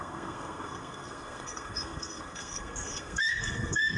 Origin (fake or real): fake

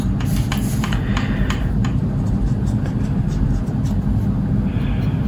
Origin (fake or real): real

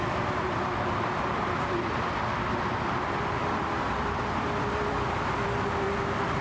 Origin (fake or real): fake